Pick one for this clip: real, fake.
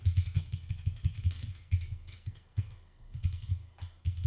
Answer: fake